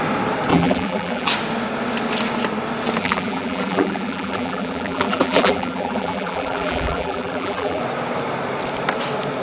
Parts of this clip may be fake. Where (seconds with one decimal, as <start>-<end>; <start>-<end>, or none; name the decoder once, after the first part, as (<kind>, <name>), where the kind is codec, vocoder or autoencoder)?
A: 0.5-1.3 (vocoder, BigVGAN v2); 3.0-7.8

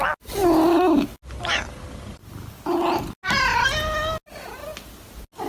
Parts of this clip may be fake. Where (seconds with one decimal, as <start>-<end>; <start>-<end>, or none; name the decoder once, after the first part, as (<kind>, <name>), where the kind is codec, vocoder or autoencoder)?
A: none

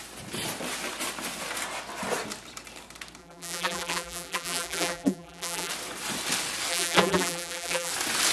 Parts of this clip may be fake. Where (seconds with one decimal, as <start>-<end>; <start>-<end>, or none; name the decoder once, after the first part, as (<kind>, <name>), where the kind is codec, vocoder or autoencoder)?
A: 3.2-5.7 (vocoder, BigVGAN v2); 6.7-7.9

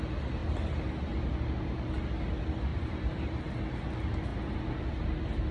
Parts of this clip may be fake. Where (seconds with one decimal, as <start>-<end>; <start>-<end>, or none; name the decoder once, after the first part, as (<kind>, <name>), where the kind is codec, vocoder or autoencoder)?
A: 2.7-3.4 (vocoder, BigVGAN v2)